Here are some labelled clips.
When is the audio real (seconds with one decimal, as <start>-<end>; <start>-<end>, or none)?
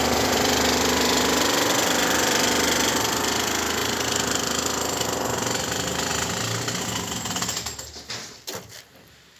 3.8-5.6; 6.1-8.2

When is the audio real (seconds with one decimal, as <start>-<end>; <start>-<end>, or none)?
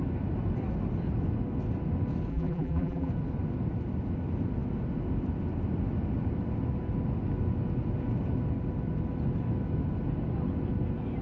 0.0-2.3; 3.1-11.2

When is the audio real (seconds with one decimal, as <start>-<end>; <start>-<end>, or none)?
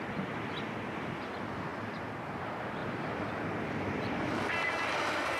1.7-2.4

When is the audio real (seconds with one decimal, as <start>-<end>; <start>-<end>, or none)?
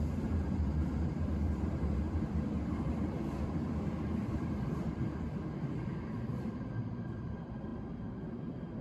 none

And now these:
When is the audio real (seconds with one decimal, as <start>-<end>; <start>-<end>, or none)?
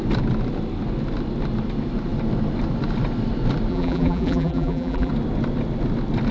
0.0-3.7; 5.1-6.3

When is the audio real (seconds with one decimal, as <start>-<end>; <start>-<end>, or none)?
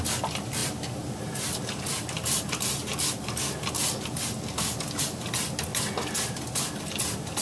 0.0-7.4